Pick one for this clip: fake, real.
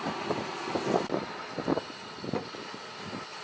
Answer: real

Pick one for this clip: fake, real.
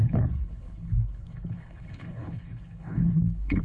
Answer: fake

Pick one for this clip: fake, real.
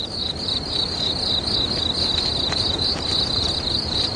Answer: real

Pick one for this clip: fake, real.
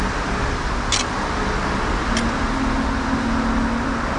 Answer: real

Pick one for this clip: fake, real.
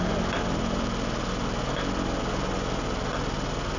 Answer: real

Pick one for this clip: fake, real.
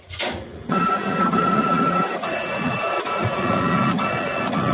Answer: fake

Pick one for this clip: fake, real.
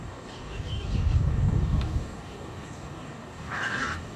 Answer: fake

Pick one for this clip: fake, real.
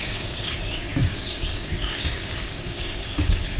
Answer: fake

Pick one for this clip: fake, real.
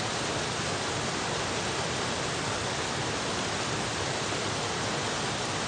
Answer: real